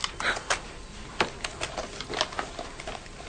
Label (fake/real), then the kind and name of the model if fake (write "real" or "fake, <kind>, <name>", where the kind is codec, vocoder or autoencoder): real